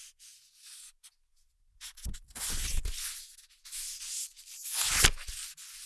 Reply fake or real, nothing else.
real